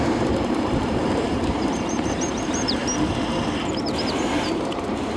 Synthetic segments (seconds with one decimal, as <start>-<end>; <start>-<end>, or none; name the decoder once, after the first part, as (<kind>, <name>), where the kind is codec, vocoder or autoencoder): 0.0-2.8 (vocoder, BigVGAN v2); 4.1-5.2